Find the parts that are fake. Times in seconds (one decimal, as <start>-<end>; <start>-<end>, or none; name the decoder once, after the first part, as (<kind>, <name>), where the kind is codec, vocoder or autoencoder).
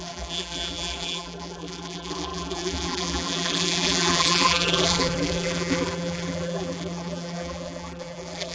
0.0-8.5 (vocoder, BigVGAN v2)